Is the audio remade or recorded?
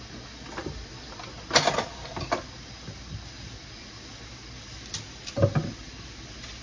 recorded